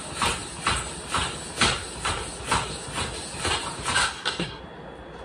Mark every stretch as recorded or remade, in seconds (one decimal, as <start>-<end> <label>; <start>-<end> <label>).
0.0-4.0 recorded; 4.0-4.6 remade; 4.6-5.2 recorded

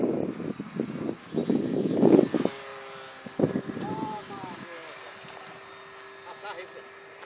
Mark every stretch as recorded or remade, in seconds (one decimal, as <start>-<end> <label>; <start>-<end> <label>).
0.0-1.4 recorded; 1.4-2.2 remade; 2.2-2.7 recorded; 2.7-7.2 remade

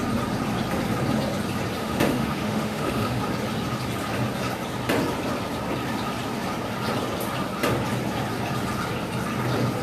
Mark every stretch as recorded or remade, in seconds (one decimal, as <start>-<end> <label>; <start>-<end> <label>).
0.0-1.8 recorded; 1.8-3.2 remade; 3.2-9.8 recorded

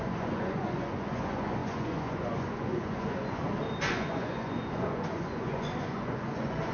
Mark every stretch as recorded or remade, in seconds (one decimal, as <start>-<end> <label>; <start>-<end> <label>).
0.0-3.4 remade; 3.4-3.9 recorded; 3.9-6.7 remade

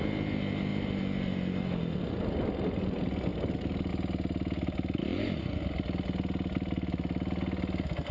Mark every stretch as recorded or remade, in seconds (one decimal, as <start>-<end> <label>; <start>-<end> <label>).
0.0-5.1 recorded; 5.1-5.6 remade; 5.6-8.1 recorded

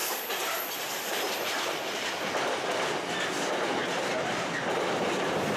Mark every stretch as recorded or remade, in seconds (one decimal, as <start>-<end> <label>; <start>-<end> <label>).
0.0-2.1 remade; 2.1-3.8 recorded; 3.8-4.5 remade; 4.5-5.6 recorded